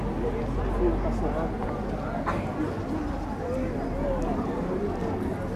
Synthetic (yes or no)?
no